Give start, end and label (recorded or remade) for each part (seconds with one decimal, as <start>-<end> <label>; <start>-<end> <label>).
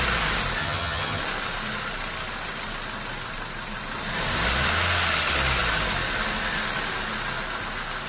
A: 0.0-0.6 recorded; 0.6-1.2 remade; 1.2-8.1 recorded